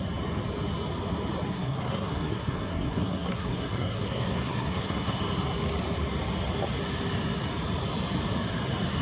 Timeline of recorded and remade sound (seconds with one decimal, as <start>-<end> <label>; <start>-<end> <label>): 0.0-1.5 recorded; 1.5-5.2 remade; 5.2-9.0 recorded